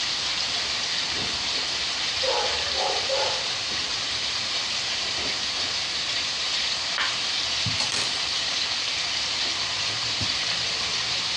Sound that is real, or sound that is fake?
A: fake